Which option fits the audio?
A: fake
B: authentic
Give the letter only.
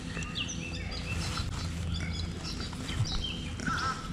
B